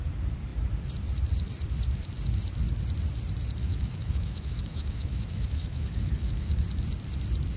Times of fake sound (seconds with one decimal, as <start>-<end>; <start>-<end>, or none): 3.6-6.6